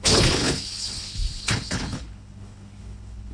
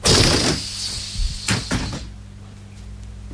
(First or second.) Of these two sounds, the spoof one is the first